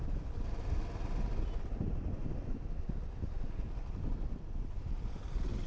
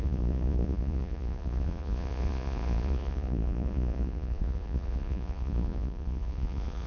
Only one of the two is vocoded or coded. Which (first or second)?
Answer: second